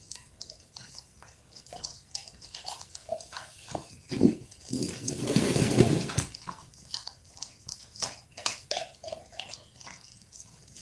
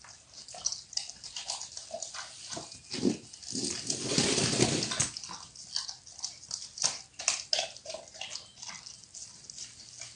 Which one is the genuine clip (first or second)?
second